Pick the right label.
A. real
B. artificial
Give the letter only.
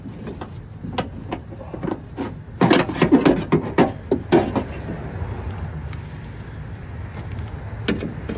A